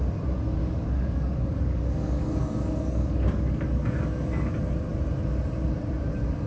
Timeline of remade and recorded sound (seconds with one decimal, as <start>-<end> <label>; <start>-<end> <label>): 0.0-0.6 recorded; 0.6-4.5 remade; 4.5-6.5 recorded